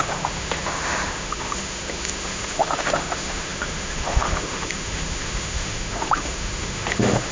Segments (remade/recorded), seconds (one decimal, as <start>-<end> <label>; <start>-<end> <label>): 0.0-7.3 remade